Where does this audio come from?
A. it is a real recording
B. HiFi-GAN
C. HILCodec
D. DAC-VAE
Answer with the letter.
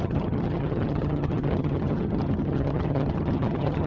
B